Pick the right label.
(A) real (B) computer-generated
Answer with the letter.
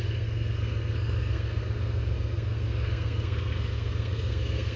B